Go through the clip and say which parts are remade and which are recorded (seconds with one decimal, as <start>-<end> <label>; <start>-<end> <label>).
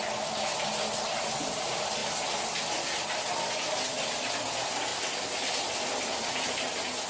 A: 0.0-2.0 recorded; 2.0-2.6 remade; 2.6-4.9 recorded; 4.9-5.7 remade; 5.7-7.1 recorded